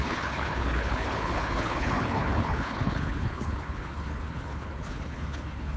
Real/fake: fake